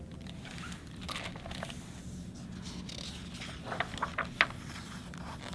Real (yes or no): yes